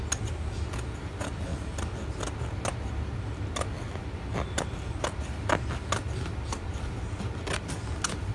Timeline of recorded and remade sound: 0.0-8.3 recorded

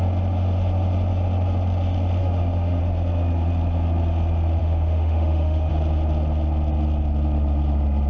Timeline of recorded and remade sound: 0.0-2.2 recorded; 2.2-2.8 remade; 2.8-4.6 recorded; 4.6-5.7 remade; 5.7-8.1 recorded